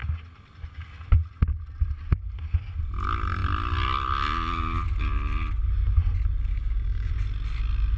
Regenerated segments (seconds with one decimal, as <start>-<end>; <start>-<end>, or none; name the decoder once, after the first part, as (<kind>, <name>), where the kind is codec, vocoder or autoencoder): 6.5-7.1 (codec, DAC)